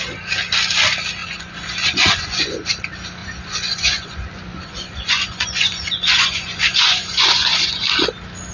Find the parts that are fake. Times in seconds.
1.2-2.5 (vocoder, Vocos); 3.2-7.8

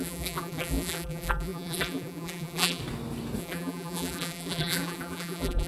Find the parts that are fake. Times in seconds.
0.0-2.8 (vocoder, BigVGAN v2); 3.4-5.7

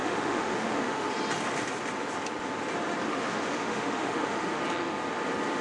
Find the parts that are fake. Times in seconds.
0.0-1.1 (autoencoder, DAC-VAE); 3.1-4.6

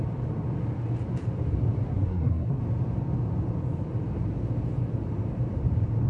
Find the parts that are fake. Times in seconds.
1.9-2.6 (codec, SNAC)

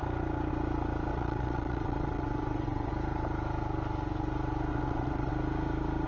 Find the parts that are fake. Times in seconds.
1.1-2.9 (vocoder, WaveNeXt); 4.7-5.3

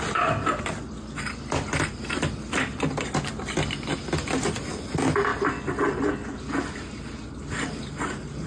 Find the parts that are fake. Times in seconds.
none

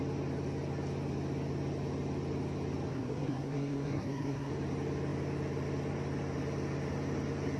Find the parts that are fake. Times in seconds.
2.9-4.5 (codec, SNAC)